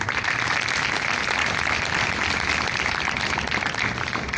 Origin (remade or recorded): recorded